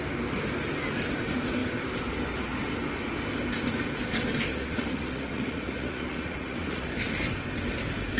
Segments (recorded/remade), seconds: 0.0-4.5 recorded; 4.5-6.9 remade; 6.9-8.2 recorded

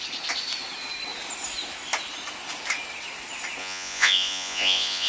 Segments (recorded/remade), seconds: 0.0-3.6 recorded; 3.6-5.1 remade

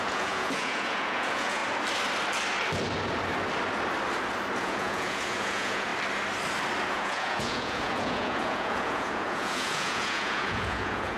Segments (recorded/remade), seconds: 0.0-1.6 remade; 1.6-4.6 recorded; 4.6-5.9 remade; 5.9-6.9 recorded; 6.9-11.2 remade

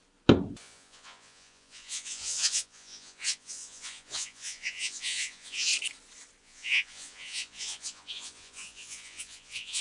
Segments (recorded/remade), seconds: 0.0-0.6 recorded; 0.6-5.7 remade; 5.7-6.4 recorded; 6.4-9.8 remade